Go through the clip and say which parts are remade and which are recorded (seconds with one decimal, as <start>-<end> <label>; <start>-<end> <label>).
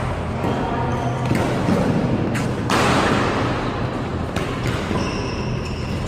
0.0-6.1 recorded